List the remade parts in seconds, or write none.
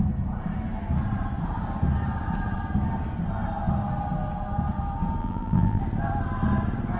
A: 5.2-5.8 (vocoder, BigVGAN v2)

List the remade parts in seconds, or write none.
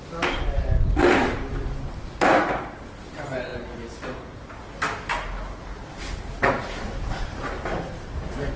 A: none